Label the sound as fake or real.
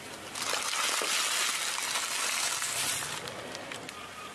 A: real